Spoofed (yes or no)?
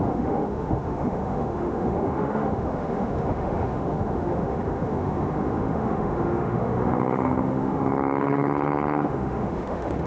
yes